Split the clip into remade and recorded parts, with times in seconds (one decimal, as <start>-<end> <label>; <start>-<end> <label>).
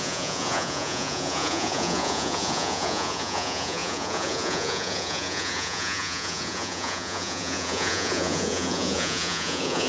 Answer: 0.0-9.9 remade